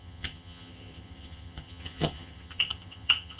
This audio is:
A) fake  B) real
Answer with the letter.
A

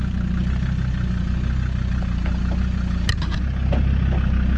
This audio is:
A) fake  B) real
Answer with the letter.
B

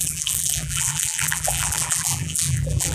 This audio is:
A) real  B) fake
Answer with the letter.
B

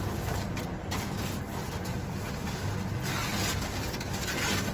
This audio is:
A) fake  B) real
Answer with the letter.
B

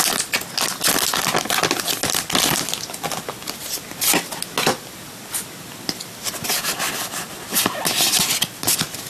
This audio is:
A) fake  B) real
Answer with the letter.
B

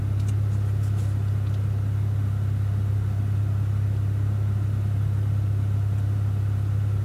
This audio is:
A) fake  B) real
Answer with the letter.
B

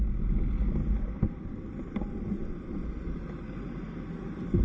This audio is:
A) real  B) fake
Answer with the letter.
A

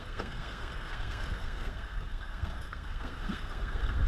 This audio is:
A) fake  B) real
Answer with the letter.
A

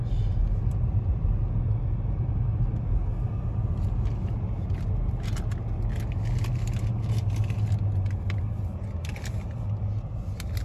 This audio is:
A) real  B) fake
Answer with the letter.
A